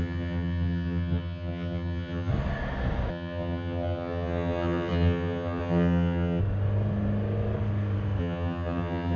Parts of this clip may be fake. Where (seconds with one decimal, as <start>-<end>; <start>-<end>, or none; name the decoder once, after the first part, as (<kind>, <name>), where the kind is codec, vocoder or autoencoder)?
0.0-2.3 (vocoder, HiFi-GAN); 3.1-6.4; 8.2-9.2